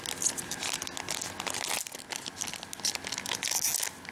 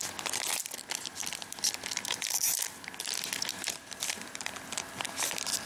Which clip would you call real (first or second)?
first